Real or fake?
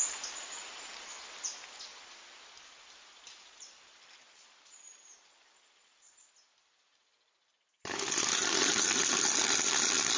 real